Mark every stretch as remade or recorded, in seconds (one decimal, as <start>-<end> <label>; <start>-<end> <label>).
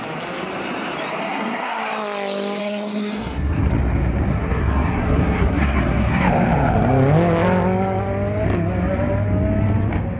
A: 0.0-1.2 recorded; 1.2-1.8 remade; 1.8-2.6 recorded; 2.6-3.7 remade; 3.7-4.3 recorded; 4.3-6.2 remade; 6.2-10.2 recorded